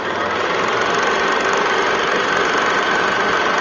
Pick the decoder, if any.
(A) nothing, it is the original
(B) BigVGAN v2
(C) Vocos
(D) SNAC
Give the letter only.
A